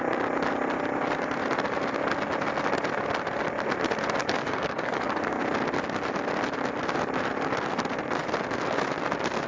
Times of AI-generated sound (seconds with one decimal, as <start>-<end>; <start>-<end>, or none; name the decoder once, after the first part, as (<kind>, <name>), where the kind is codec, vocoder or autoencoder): 4.2-5.4 (codec, DAC)